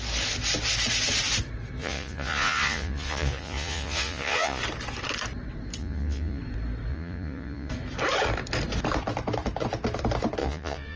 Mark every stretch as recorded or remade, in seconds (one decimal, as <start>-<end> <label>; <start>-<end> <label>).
0.0-1.8 recorded; 1.8-4.6 remade; 4.6-5.8 recorded; 5.8-6.4 remade; 6.4-6.9 recorded; 6.9-7.7 remade; 7.7-10.4 recorded; 10.4-11.0 remade